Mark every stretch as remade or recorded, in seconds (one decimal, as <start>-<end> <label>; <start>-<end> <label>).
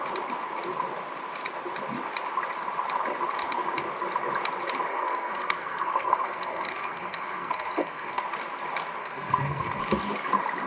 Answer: 0.0-4.9 recorded; 4.9-8.2 remade; 8.2-9.0 recorded; 9.0-9.8 remade; 9.8-10.7 recorded